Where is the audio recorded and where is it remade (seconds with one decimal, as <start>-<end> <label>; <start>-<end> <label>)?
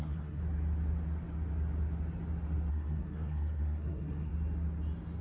0.0-0.4 remade; 0.4-2.7 recorded; 2.7-4.3 remade; 4.3-5.2 recorded